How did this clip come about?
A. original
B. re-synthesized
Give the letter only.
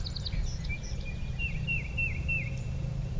B